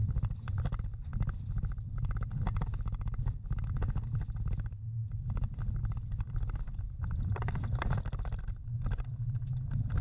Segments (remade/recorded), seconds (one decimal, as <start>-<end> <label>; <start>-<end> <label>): 0.0-0.8 remade; 0.8-5.8 recorded; 5.8-8.4 remade; 8.4-10.0 recorded